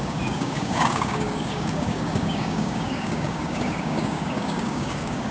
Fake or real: fake